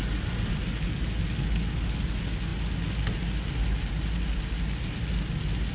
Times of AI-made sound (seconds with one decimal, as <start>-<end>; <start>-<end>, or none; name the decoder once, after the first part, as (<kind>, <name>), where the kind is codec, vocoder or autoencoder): none